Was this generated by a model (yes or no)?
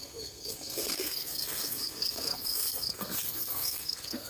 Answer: yes